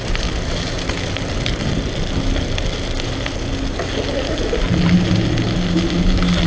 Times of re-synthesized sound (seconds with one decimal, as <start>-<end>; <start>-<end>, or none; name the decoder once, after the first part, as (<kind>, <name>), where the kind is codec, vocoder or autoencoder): none